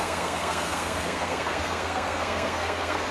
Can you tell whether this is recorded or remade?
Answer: remade